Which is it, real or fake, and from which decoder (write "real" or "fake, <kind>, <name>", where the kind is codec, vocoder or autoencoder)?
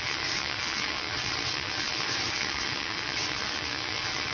fake, vocoder, WaveNeXt